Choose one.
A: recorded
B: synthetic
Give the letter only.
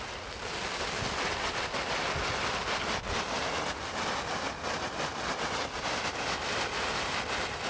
A